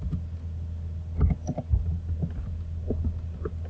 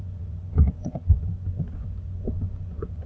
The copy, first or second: second